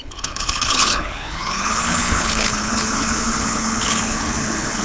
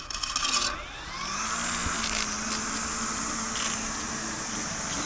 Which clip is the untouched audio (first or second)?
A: second